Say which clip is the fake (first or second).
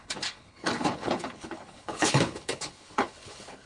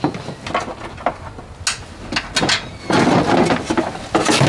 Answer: first